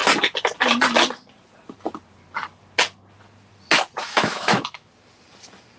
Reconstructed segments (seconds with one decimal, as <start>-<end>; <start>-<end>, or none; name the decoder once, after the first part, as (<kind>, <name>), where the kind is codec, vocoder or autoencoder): 4.0-4.9 (autoencoder, DAC-VAE)